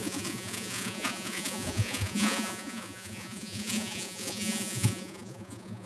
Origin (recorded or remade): remade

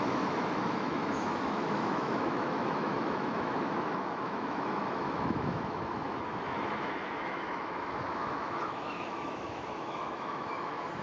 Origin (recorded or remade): remade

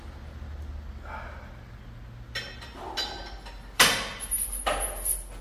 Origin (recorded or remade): recorded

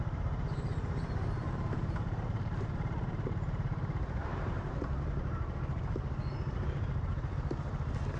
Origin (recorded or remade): remade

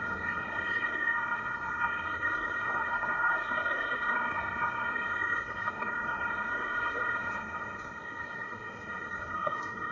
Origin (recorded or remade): remade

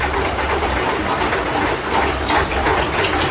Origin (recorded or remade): recorded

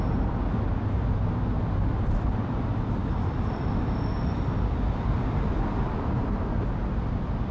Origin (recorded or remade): recorded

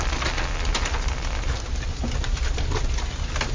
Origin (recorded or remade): recorded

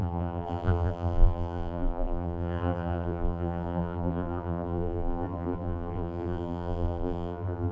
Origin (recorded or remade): remade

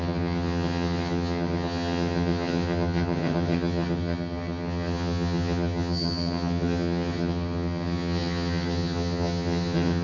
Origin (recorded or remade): remade